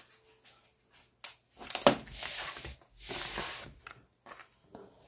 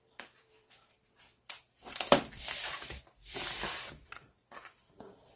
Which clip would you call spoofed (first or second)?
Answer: second